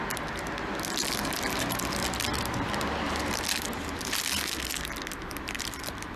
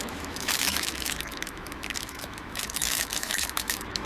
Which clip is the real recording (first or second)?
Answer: first